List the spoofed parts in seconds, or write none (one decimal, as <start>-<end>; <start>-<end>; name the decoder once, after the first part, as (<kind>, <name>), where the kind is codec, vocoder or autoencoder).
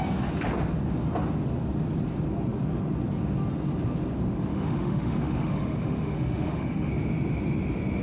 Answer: 4.5-6.9 (autoencoder, DAC-VAE)